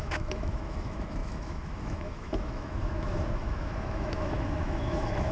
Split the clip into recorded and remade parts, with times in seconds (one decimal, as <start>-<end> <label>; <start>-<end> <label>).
0.0-5.3 remade